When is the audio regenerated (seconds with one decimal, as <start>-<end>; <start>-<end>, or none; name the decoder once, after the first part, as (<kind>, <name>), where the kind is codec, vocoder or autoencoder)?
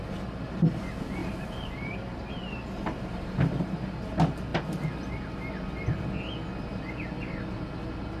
1.2-3.6 (vocoder, BigVGAN v2)